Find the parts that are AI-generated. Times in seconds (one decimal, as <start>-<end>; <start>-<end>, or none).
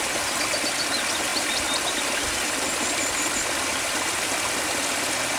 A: none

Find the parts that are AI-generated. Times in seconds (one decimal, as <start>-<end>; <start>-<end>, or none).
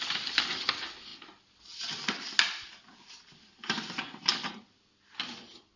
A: none